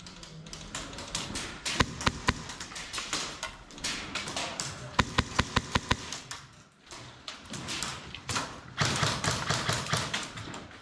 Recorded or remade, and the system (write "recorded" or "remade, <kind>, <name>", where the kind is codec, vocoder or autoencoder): remade, vocoder, BigVGAN v2